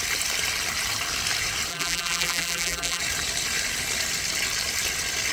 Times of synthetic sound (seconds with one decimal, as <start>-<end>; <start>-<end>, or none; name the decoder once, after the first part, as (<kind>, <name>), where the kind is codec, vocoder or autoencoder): 1.7-3.0 (vocoder, BigVGAN v2)